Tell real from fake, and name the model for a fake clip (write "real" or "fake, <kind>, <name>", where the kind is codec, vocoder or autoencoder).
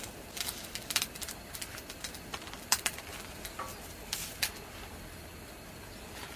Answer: fake, vocoder, BigVGAN v2